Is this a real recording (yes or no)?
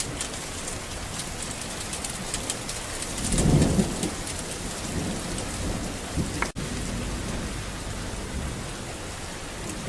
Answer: yes